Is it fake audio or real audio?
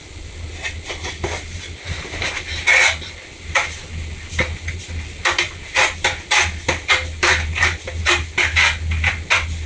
real